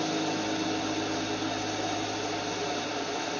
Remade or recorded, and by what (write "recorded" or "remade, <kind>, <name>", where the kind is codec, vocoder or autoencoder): recorded